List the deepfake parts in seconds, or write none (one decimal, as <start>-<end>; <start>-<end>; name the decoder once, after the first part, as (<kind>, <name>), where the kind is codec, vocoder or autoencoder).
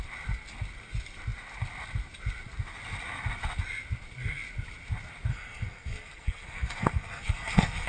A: 5.3-7.9 (codec, SNAC)